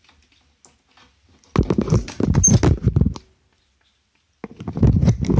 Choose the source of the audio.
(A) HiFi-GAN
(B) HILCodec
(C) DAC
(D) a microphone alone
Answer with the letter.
D